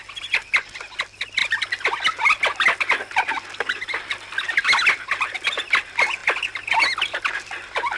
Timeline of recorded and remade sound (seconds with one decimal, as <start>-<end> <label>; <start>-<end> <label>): 0.0-8.0 recorded